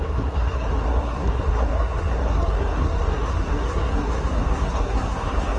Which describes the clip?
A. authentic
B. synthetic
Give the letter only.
B